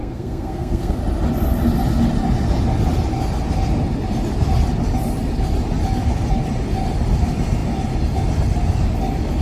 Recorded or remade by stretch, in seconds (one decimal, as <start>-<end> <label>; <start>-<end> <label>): 0.0-1.0 remade; 1.0-9.4 recorded